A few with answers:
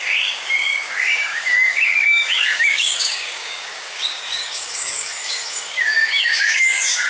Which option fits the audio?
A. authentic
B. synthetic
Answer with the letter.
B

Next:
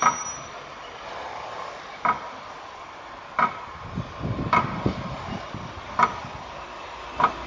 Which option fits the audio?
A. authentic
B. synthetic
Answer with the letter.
A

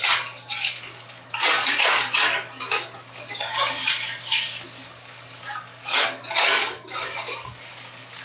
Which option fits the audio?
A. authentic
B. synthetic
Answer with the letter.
B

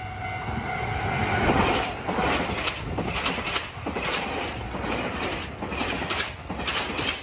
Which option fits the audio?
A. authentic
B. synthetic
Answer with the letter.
A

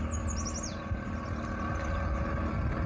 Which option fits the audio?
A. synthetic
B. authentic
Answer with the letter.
B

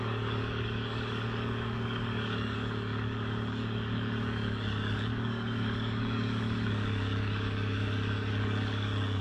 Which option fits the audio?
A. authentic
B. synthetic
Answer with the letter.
B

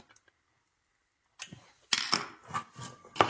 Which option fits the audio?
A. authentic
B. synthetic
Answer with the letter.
A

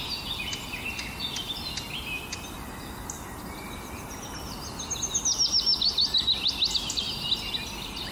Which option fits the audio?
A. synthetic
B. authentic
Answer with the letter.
B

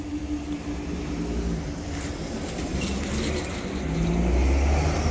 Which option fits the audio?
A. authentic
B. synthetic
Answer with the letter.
A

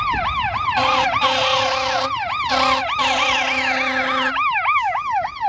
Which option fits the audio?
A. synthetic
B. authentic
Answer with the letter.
B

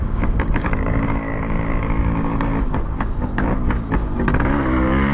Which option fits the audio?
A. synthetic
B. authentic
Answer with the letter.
A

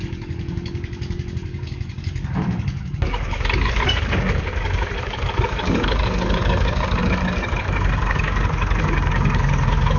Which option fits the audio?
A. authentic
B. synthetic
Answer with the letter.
B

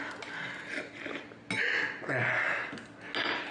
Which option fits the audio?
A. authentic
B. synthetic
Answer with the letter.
A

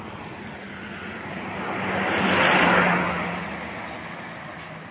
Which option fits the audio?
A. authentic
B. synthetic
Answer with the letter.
A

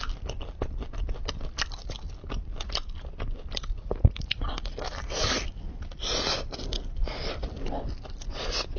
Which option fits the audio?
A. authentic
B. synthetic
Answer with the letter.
A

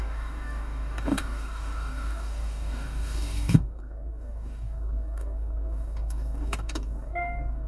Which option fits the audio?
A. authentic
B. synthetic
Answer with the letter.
B